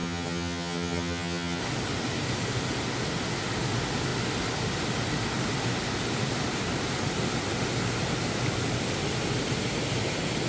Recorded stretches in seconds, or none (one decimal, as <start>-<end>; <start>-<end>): 1.6-10.5